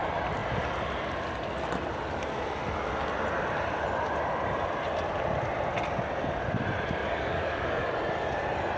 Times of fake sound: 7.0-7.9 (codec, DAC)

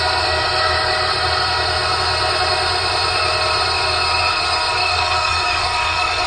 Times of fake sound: 4.8-6.3 (codec, DAC)

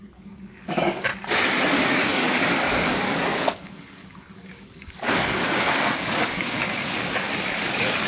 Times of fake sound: 0.0-1.1 (codec, DAC); 1.7-8.1

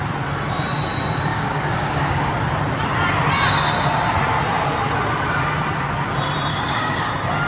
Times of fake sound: 1.3-2.4 (codec, DAC); 6.5-7.1